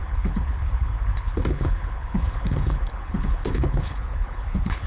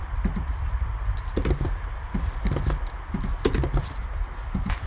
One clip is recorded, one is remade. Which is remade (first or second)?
first